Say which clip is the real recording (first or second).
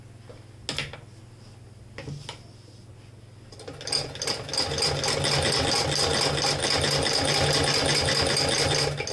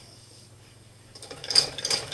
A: first